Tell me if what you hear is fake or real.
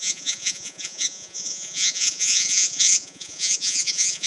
fake